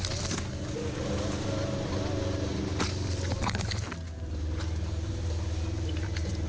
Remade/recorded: recorded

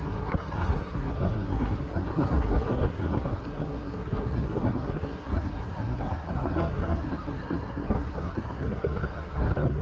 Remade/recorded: remade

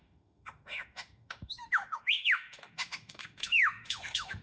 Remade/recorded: remade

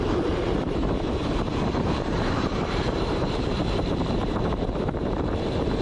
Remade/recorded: remade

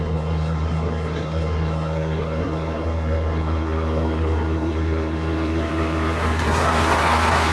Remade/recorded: remade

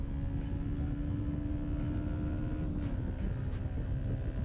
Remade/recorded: recorded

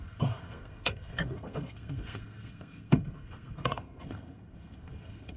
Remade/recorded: remade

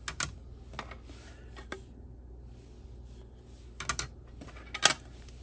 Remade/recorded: recorded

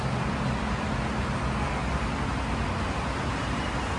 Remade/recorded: recorded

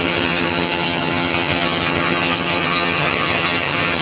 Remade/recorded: remade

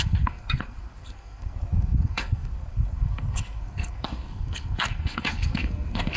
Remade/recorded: remade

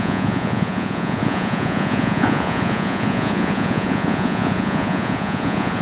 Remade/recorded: remade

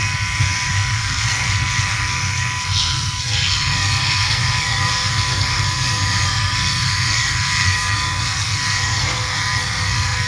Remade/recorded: remade